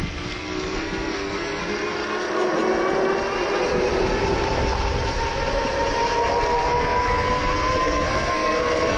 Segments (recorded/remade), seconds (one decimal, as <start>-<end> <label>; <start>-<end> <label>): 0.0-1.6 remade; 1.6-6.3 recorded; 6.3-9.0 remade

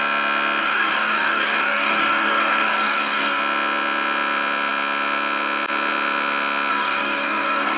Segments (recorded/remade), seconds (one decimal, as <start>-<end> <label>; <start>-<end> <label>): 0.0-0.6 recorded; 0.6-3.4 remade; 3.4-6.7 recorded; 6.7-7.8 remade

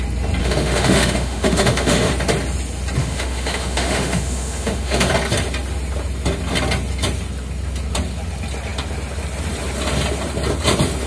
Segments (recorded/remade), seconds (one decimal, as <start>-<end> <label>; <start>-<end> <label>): 0.0-0.4 recorded; 0.4-2.1 remade; 2.1-3.0 recorded; 3.0-5.1 remade; 5.1-11.1 recorded

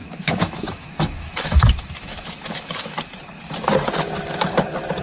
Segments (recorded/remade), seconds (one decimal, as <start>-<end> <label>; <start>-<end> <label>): 0.0-3.0 remade; 3.0-5.0 recorded

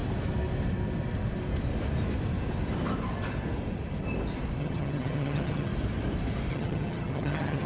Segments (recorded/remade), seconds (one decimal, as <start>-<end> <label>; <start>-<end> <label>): 0.0-4.6 recorded; 4.6-5.7 remade; 5.7-6.5 recorded; 6.5-7.7 remade

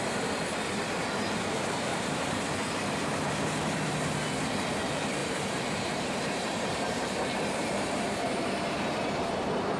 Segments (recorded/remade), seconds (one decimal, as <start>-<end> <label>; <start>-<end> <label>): 0.0-1.9 recorded; 1.9-3.4 remade; 3.4-5.2 recorded; 5.2-9.1 remade; 9.1-9.8 recorded

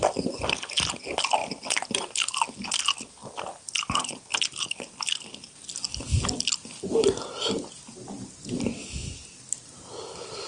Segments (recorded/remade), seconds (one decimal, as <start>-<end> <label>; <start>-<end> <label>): 0.0-10.5 recorded